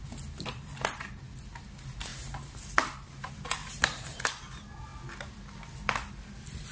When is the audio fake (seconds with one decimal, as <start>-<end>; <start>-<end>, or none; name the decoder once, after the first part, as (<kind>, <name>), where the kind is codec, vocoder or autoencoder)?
2.1-2.7 (vocoder, BigVGAN v2); 3.6-4.3